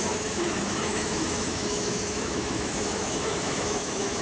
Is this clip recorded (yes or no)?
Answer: no